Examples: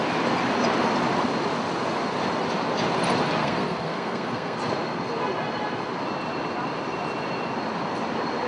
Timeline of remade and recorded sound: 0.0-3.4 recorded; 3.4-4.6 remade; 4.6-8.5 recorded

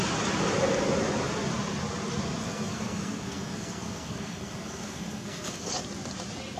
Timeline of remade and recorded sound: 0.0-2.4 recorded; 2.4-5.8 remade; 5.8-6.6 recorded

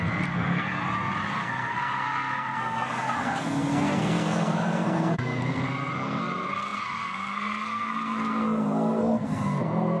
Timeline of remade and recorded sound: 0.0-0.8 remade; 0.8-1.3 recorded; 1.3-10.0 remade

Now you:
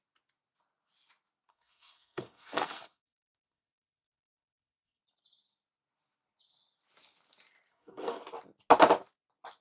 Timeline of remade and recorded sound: 0.0-1.5 recorded; 1.5-5.0 remade; 5.0-7.7 recorded; 7.7-8.2 remade; 8.2-9.6 recorded